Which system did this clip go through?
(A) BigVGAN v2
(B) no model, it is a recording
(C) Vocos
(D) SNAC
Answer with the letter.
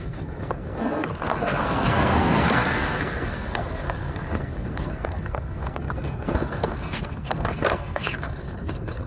D